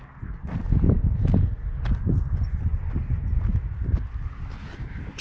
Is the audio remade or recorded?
recorded